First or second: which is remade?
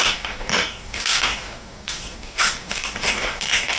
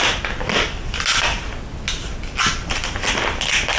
first